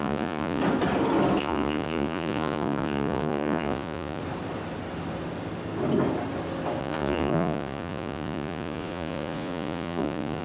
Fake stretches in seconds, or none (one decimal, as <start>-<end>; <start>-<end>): 0.0-0.6; 1.4-4.2; 6.8-10.4

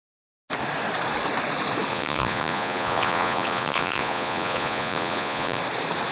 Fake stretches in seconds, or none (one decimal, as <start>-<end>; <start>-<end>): 1.9-5.6

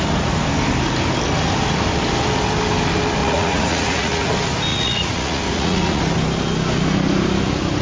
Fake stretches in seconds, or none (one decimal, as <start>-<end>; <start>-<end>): 3.2-4.3; 4.7-6.0

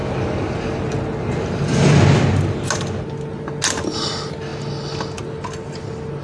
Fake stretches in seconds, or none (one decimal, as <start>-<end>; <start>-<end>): none

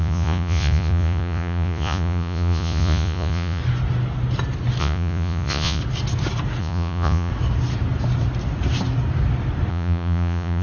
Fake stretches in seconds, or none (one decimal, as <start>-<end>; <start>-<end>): 0.0-3.6; 4.8-5.8; 6.6-7.3; 9.7-10.6

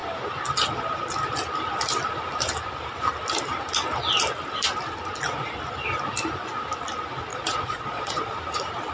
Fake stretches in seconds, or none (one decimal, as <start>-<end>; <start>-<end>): 7.3-8.3